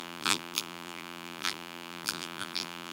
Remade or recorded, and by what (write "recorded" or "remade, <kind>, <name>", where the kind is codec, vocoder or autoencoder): remade, vocoder, BigVGAN v2